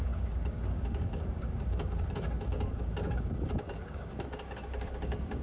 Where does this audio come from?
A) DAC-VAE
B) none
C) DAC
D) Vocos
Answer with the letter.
C